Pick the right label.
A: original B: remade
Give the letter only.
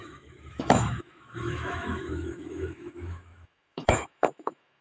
B